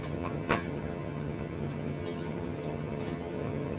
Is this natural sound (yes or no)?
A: no